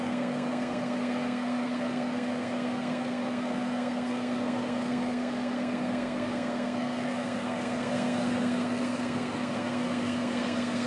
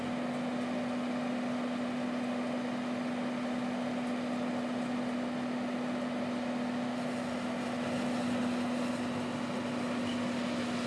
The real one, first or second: second